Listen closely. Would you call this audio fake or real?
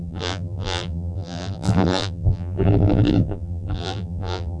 fake